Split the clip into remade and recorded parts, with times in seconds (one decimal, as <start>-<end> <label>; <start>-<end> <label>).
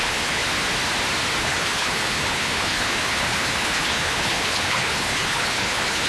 0.0-0.4 remade; 0.4-1.4 recorded; 1.4-6.1 remade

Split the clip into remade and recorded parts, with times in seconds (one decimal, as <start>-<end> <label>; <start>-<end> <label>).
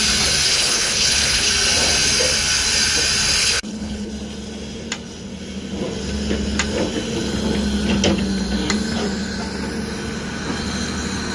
0.0-0.5 recorded; 0.5-1.5 remade; 1.5-3.4 recorded; 3.4-4.1 remade; 4.1-11.3 recorded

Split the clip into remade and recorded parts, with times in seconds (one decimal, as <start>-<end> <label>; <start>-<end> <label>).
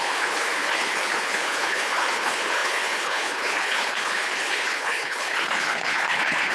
0.0-6.5 remade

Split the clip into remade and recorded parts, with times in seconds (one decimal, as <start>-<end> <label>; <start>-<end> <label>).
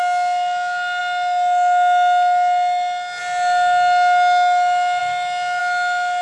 0.0-6.2 recorded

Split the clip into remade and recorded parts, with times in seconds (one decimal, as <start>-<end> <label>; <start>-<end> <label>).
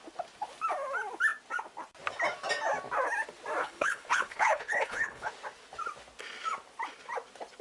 0.0-3.6 recorded; 3.6-5.3 remade; 5.3-7.6 recorded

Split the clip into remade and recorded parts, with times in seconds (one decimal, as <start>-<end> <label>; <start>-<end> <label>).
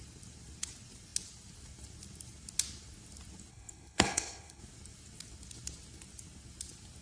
0.0-3.5 recorded; 3.5-4.6 remade; 4.6-7.0 recorded